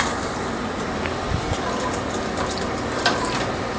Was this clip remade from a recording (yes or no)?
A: no